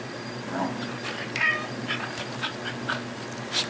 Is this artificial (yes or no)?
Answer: no